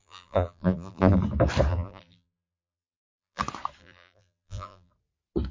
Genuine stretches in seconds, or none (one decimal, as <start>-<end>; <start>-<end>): 1.2-1.7; 3.4-3.8; 4.9-5.5